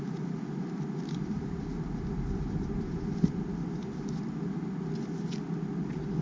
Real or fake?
real